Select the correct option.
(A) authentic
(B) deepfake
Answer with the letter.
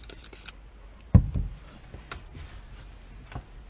A